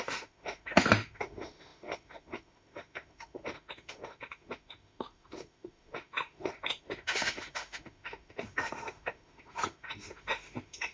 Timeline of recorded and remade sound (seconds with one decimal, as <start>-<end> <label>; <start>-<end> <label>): 0.0-10.9 remade